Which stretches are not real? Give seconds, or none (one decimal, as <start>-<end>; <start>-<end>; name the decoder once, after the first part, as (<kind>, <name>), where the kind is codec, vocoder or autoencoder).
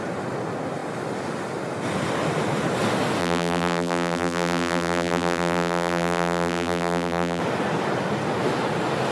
3.2-7.4 (vocoder, BigVGAN v2)